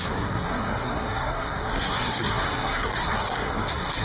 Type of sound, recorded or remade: remade